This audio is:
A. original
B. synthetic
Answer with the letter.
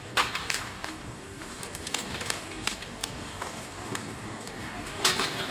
B